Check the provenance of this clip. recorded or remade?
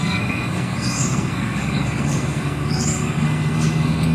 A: remade